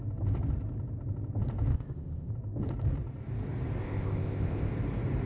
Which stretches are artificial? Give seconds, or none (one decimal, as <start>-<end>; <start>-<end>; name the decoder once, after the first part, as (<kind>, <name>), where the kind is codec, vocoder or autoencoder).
1.7-2.3 (codec, ZipCodec); 3.8-4.7